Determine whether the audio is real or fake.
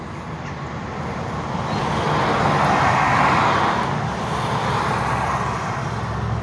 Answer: real